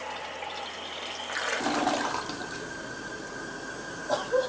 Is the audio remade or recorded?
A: recorded